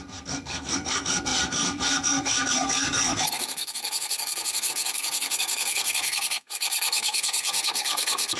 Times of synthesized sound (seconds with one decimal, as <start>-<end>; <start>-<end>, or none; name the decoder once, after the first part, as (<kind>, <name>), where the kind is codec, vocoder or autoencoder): 0.0-8.4 (codec, SNAC)